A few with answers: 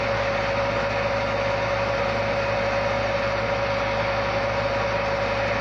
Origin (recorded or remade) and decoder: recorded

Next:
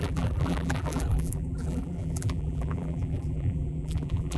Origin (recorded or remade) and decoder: remade, vocoder, BigVGAN v2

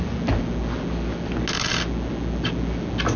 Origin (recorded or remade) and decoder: recorded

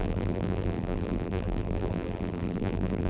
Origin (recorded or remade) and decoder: remade, vocoder, BigVGAN v2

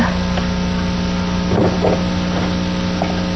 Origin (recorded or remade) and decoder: recorded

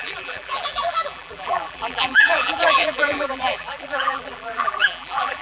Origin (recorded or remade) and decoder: remade, vocoder, BigVGAN v2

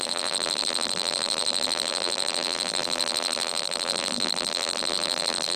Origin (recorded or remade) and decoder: remade, vocoder, BigVGAN v2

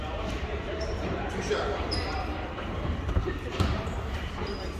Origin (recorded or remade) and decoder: remade, vocoder, BigVGAN v2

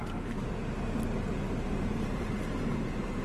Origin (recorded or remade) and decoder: remade, vocoder, BigVGAN v2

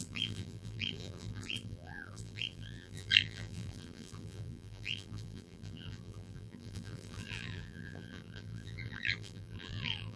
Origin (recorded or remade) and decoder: remade, vocoder, BigVGAN v2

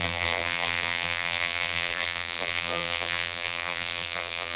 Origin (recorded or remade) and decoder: remade, vocoder, BigVGAN v2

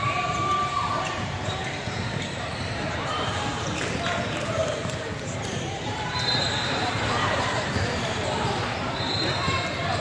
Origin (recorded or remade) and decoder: remade, vocoder, BigVGAN v2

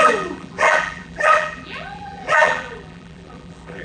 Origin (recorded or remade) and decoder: remade, vocoder, BigVGAN v2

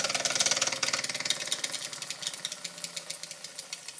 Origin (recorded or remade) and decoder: recorded